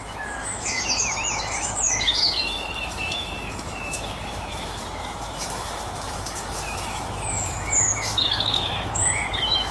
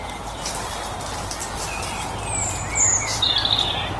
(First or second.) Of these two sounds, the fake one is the first